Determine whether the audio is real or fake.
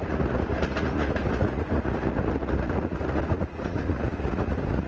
fake